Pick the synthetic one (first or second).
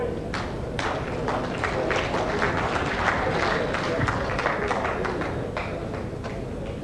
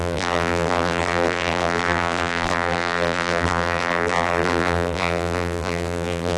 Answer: second